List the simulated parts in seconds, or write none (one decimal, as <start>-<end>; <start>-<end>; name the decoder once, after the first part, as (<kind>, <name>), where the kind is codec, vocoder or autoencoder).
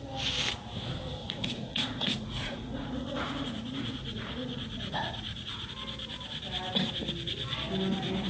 1.2-5.7 (vocoder, Vocos)